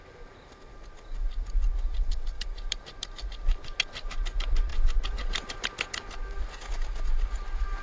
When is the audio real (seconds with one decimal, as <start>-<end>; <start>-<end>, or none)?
0.0-7.8